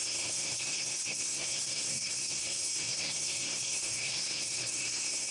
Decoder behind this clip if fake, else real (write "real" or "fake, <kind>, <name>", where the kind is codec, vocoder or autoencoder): fake, codec, SNAC